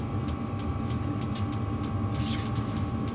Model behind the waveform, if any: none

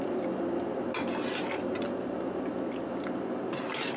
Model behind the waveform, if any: none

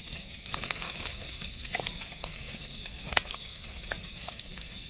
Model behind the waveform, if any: codec, SNAC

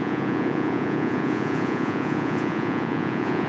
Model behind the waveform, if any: vocoder, Vocos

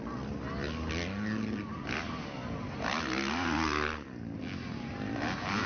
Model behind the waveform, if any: none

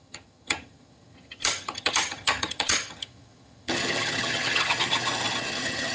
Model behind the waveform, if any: vocoder, HiFi-GAN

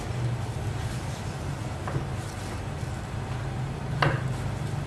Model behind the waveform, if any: none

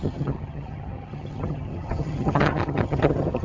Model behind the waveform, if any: vocoder, HiFi-GAN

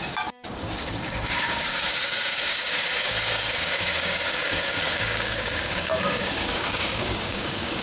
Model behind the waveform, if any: codec, DAC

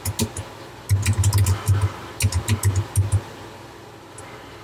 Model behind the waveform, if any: none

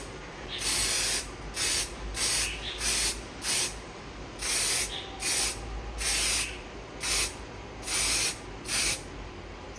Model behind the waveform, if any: none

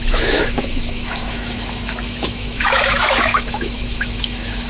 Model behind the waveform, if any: autoencoder, DAC-VAE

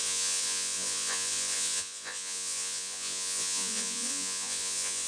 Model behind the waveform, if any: vocoder, Vocos